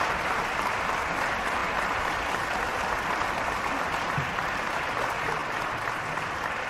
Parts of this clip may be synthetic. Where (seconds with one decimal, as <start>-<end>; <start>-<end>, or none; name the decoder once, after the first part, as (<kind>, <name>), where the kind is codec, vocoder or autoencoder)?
1.6-2.2 (vocoder, BigVGAN v2)